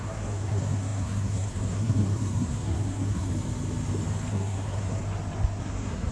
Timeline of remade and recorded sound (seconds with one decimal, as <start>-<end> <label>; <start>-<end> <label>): 0.0-3.3 remade; 3.3-4.3 recorded; 4.3-5.0 remade; 5.0-5.6 recorded; 5.6-6.1 remade